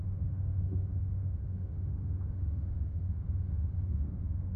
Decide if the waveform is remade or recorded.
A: remade